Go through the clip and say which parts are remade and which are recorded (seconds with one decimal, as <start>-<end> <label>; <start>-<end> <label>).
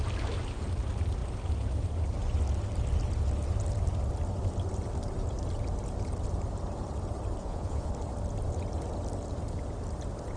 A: 0.0-7.4 recorded; 7.4-7.9 remade; 7.9-10.4 recorded